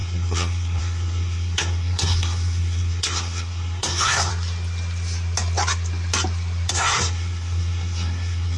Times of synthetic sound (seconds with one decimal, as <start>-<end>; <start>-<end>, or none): 0.0-4.3; 6.7-8.6